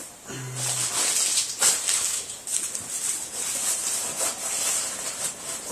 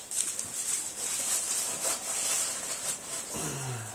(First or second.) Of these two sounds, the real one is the first